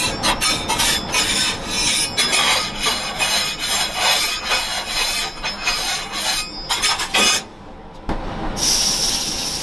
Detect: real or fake real